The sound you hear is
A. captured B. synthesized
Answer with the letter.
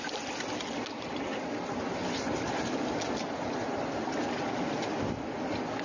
A